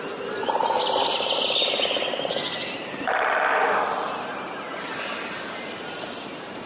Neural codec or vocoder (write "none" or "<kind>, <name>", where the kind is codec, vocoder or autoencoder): none